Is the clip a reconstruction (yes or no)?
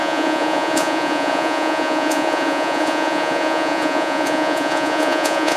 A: yes